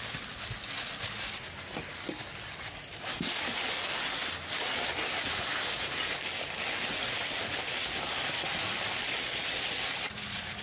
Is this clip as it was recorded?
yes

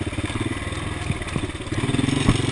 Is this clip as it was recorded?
yes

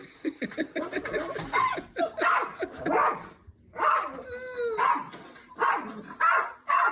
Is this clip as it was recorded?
yes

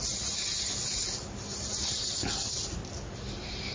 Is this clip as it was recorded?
yes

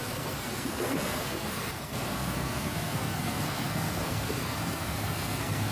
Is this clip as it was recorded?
no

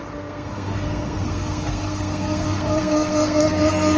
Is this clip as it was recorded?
no